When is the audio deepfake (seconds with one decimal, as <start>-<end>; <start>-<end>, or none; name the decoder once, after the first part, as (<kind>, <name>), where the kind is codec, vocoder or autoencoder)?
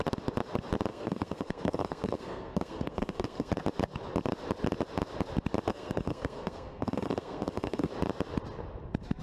0.9-3.5 (codec, SNAC); 5.7-7.9